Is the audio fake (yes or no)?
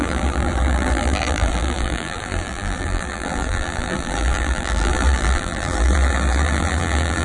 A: yes